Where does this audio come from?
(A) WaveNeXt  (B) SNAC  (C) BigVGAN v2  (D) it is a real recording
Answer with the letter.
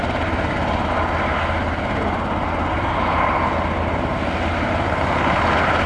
D